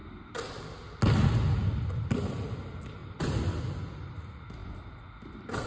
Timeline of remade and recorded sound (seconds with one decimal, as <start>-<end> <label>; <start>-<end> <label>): 0.0-3.0 recorded; 3.0-3.8 remade; 3.8-4.6 recorded; 4.6-5.7 remade